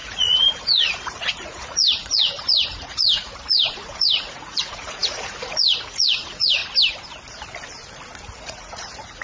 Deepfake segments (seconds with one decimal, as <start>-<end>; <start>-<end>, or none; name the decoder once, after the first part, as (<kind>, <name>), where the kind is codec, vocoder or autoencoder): 0.0-6.6 (vocoder, Vocos); 8.4-9.2

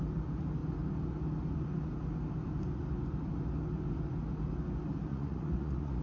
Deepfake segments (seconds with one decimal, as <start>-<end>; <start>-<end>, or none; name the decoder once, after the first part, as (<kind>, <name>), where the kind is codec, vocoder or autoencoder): 5.1-6.0 (vocoder, Vocos)

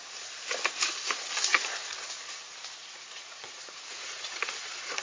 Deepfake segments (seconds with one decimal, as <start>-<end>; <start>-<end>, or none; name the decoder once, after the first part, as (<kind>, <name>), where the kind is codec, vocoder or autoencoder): 1.5-2.4 (vocoder, Vocos); 2.8-5.0

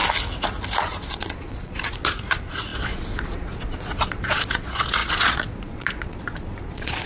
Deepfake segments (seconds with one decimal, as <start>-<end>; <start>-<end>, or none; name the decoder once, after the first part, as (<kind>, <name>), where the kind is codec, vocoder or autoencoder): 0.8-7.1 (vocoder, Vocos)

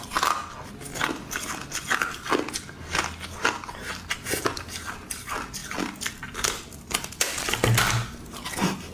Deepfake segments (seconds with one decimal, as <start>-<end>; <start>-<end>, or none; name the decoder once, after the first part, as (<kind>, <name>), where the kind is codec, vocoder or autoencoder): none

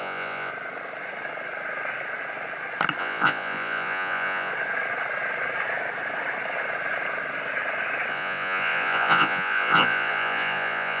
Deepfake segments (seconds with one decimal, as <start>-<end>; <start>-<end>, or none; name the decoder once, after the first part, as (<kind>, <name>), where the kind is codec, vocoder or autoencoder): 0.0-0.5 (vocoder, Vocos); 3.0-4.5; 8.1-11.0